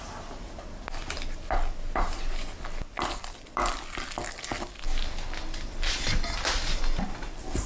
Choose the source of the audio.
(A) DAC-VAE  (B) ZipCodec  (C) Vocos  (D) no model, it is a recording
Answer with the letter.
D